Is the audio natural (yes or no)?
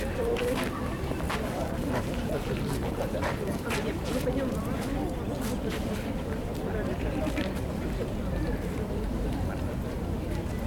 no